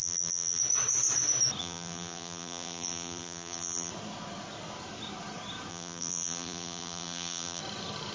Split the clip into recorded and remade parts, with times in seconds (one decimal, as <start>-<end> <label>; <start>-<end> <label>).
0.0-0.6 remade; 0.6-1.6 recorded; 1.6-3.9 remade; 3.9-5.7 recorded; 5.7-7.6 remade; 7.6-8.1 recorded